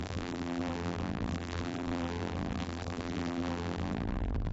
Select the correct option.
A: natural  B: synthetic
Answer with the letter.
B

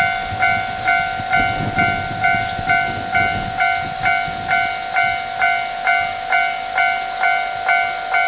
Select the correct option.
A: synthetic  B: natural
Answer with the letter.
B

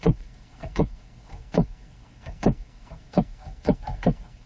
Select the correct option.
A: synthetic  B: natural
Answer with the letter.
A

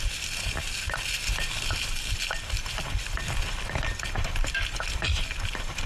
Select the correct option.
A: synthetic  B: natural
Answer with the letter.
B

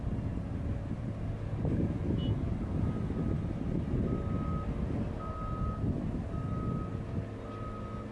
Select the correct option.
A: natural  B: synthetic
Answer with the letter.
A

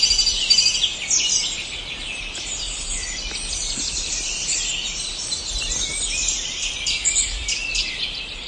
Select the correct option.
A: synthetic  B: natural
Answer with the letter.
B